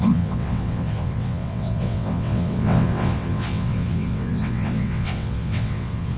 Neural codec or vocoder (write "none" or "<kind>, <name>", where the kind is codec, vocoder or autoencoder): vocoder, WaveNeXt